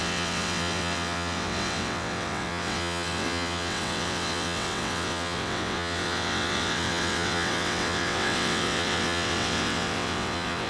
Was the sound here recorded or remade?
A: remade